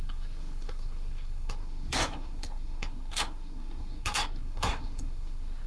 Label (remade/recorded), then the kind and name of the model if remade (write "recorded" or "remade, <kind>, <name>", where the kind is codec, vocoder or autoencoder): remade, codec, SNAC